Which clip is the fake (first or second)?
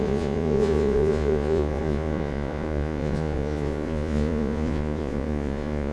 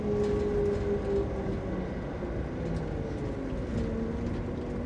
first